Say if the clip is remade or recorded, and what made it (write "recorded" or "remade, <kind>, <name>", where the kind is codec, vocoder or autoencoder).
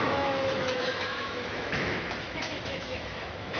remade, autoencoder, DAC-VAE